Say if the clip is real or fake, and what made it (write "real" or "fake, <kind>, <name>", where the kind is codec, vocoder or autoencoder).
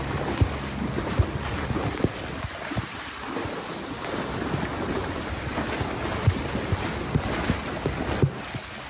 real